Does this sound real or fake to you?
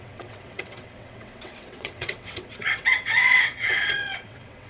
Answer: fake